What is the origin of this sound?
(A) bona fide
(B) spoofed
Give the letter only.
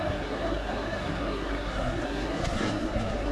B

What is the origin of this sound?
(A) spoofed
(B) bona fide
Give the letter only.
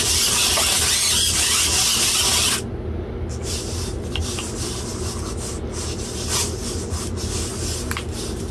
B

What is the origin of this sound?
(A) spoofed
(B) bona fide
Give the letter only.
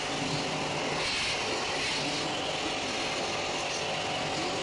B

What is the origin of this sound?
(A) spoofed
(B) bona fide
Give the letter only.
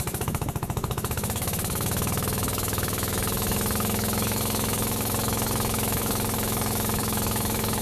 A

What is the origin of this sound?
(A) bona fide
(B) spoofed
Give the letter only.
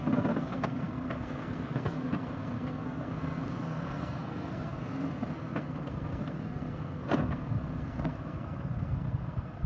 B